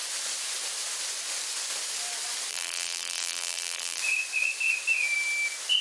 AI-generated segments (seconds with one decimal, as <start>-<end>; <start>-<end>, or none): 2.5-4.0